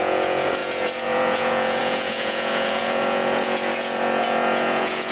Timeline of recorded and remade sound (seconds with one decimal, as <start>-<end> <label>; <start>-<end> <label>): 0.0-5.1 remade